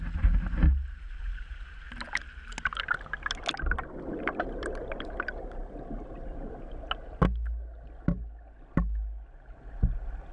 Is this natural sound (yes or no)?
yes